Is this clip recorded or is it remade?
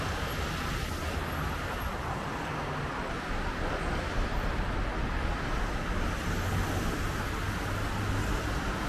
recorded